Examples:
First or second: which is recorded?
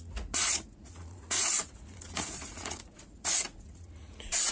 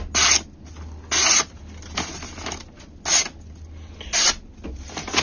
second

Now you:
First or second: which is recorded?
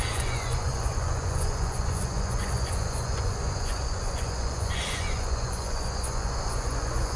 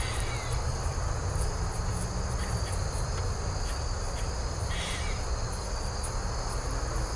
second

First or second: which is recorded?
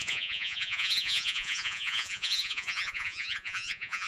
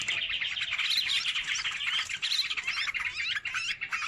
second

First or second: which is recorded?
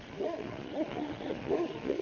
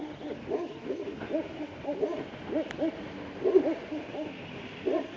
second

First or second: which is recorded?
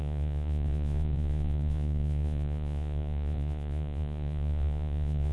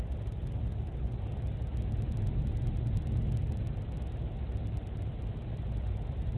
second